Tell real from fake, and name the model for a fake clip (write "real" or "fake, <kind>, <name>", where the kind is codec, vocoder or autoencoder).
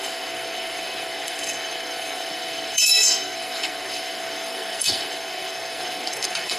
fake, codec, SNAC